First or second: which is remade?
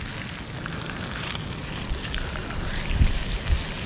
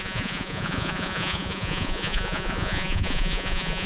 second